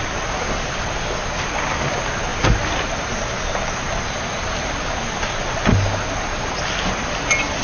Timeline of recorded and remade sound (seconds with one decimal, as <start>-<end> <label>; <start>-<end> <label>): 0.0-7.6 recorded